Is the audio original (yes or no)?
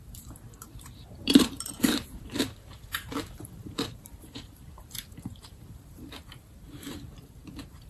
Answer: no